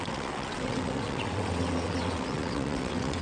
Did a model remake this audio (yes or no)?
yes